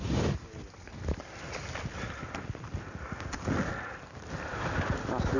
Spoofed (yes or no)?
no